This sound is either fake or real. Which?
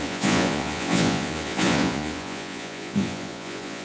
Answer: fake